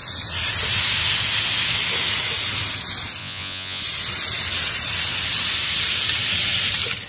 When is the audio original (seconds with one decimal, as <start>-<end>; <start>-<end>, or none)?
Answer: 0.0-3.2; 3.8-7.1

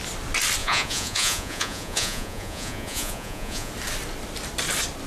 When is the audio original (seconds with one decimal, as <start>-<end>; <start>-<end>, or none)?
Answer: 0.0-0.6; 3.7-5.1

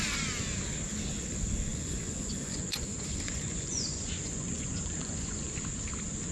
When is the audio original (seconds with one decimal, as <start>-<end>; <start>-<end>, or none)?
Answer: 0.0-1.7; 5.5-6.3